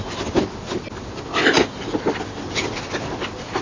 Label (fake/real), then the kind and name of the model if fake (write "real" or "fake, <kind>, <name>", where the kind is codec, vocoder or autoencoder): real